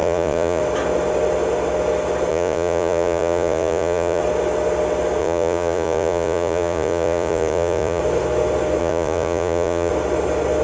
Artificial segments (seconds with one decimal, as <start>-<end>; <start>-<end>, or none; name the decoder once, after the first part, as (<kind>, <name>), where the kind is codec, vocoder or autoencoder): 0.0-0.6 (vocoder, Vocos); 2.3-4.2; 5.2-8.0; 8.8-9.9